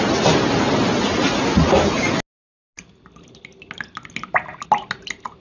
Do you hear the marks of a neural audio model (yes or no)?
no